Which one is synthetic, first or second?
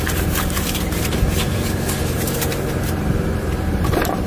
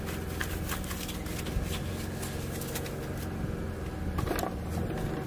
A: first